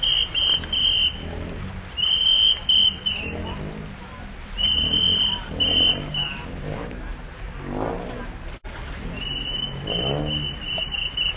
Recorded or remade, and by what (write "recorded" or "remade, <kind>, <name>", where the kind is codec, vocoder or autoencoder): recorded